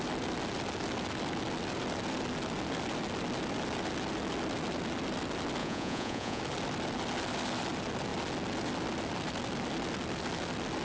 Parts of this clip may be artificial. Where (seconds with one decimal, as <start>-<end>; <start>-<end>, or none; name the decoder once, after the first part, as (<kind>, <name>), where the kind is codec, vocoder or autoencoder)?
5.6-6.4 (vocoder, Vocos)